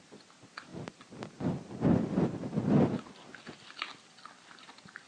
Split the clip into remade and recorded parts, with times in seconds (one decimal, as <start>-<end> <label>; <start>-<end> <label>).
0.0-5.1 recorded